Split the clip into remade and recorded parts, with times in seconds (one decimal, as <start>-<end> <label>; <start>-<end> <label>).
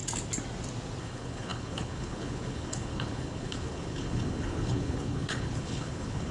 0.0-1.0 recorded; 1.0-6.3 remade